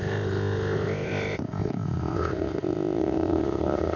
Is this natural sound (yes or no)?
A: no